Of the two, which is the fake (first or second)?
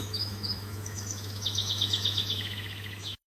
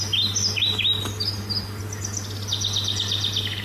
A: first